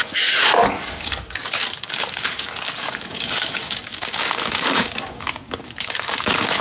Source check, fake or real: fake